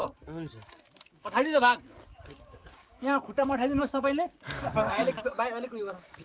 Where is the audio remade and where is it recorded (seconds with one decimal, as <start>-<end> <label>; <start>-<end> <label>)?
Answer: 0.0-1.1 recorded; 1.1-5.0 remade; 5.0-5.8 recorded; 5.8-6.2 remade